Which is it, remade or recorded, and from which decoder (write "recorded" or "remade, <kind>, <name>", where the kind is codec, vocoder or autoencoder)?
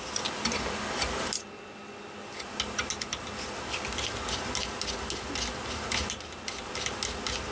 recorded